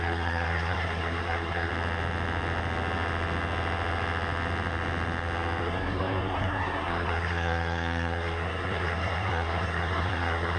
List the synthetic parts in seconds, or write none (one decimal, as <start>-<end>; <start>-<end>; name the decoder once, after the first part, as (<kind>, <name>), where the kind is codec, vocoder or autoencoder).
0.0-1.7 (codec, SNAC); 5.6-10.6